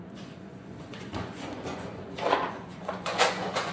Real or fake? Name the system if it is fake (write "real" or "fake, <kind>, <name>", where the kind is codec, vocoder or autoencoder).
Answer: fake, vocoder, Vocos